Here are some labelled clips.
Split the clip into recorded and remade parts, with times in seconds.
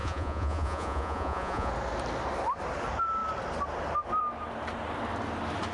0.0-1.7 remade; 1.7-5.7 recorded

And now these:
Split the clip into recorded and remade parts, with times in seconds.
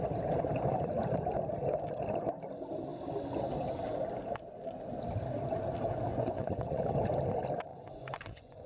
0.0-6.1 recorded; 6.1-6.8 remade; 6.8-7.7 recorded; 7.7-8.7 remade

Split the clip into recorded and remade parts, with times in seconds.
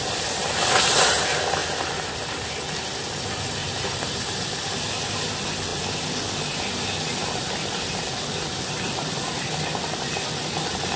0.0-11.0 recorded